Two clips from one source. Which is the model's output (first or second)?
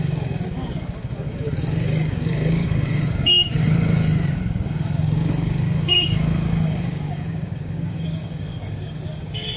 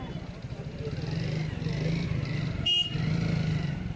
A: first